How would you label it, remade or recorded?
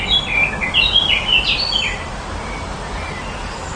recorded